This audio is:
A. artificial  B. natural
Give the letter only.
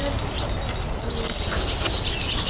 B